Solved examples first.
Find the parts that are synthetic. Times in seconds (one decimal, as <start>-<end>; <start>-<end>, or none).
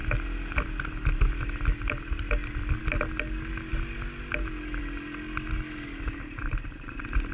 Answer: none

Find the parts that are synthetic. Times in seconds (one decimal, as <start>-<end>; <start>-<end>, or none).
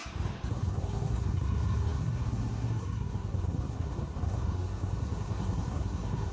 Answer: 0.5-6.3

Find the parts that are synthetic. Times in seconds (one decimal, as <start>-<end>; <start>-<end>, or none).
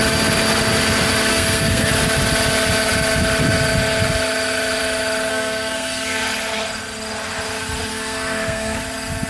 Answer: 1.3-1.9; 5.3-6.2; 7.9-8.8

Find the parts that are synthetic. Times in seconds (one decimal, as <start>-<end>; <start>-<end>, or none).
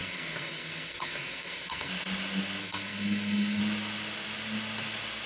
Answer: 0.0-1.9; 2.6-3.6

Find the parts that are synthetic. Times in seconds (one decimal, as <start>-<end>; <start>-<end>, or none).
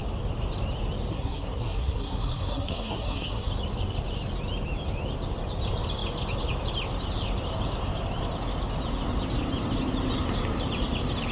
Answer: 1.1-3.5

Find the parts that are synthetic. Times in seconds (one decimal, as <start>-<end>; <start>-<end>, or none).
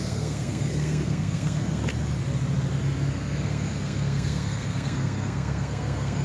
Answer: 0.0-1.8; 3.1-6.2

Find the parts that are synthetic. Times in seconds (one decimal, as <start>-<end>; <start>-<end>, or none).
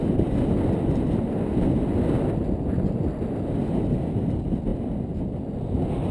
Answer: none